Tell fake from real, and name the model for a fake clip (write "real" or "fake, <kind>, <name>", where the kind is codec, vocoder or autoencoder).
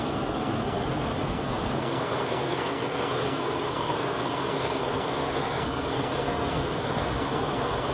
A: fake, codec, SNAC